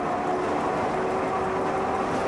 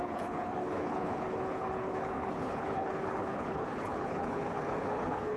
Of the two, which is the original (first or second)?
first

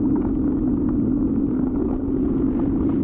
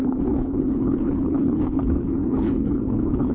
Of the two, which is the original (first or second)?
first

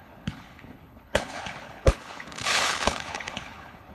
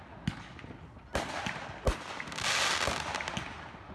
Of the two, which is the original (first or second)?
second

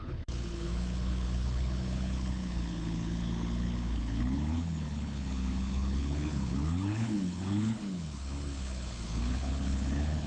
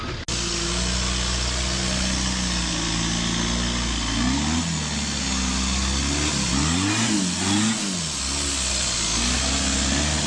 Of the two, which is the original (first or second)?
second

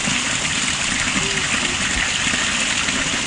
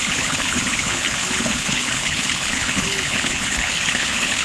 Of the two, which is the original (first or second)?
first